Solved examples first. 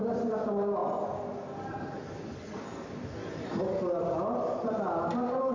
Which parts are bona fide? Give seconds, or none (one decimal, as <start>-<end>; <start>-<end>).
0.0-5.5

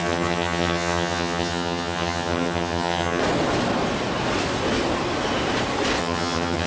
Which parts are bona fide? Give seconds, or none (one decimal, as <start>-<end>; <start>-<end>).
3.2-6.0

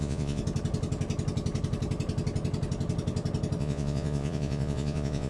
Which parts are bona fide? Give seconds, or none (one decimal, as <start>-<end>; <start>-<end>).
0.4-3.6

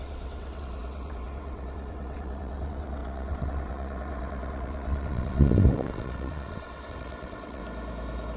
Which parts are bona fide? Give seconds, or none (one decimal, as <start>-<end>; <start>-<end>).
7.6-8.4

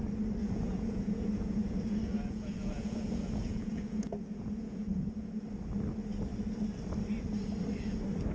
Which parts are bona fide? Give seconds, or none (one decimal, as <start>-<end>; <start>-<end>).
0.0-0.4; 5.3-8.3

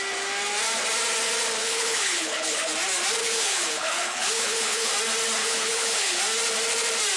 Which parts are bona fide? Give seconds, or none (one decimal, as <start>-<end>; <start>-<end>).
0.0-1.6; 2.7-3.2; 4.9-5.4; 6.2-7.2

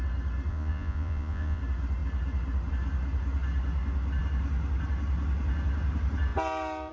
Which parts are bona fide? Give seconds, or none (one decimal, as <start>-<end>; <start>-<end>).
0.0-0.5; 1.6-6.9